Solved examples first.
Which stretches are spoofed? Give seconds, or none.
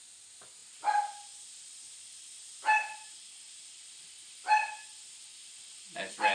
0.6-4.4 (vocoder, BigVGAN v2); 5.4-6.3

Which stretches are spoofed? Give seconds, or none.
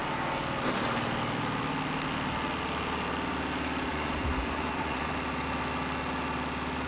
3.9-5.1 (vocoder, Vocos)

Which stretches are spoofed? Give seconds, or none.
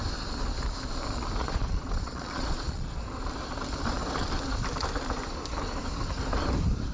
1.4-3.0 (vocoder, Vocos)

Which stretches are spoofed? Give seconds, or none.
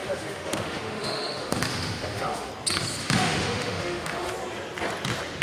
0.0-2.5 (autoencoder, DAC-VAE); 3.0-4.3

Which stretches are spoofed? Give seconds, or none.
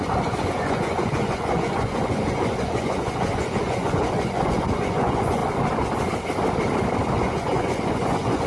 0.0-5.4 (vocoder, Vocos); 7.1-8.5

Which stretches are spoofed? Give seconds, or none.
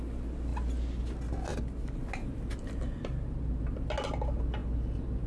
none